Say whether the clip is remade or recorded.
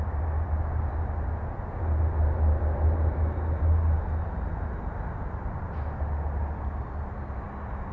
recorded